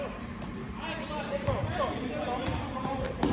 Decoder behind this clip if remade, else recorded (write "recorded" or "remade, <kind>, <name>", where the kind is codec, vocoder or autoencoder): remade, vocoder, BigVGAN v2